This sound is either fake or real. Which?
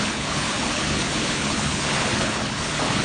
fake